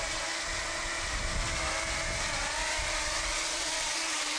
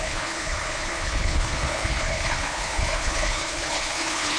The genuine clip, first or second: first